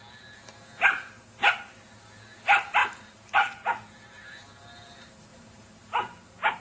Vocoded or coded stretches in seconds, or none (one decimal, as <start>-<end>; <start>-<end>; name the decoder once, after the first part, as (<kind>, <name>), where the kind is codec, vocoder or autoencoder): 2.8-4.6 (vocoder, BigVGAN v2); 5.3-6.6